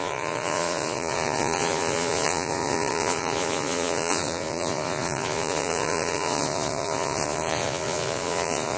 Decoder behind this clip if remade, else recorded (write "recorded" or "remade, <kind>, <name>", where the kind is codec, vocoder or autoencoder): remade, vocoder, Vocos